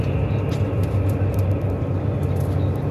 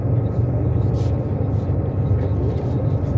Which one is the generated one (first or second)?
second